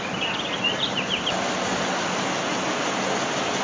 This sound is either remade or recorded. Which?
recorded